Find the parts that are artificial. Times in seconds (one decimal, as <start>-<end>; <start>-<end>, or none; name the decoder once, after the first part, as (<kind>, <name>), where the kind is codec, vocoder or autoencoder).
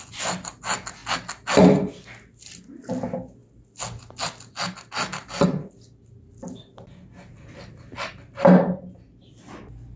none